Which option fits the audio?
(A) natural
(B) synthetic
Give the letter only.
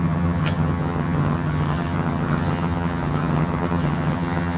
B